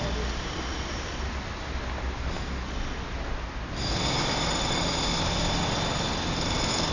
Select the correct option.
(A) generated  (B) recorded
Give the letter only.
B